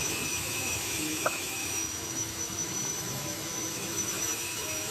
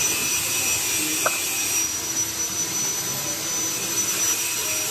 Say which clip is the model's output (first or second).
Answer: first